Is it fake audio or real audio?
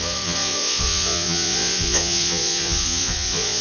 fake